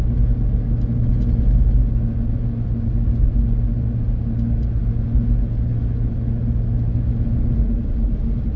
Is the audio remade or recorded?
recorded